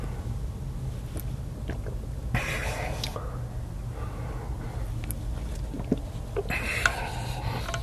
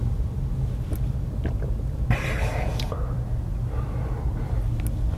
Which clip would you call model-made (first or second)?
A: second